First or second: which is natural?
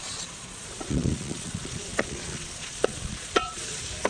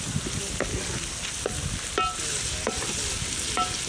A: second